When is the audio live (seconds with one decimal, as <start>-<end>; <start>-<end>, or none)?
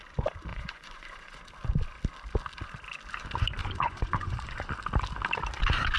0.0-0.5; 1.4-3.6; 4.7-6.0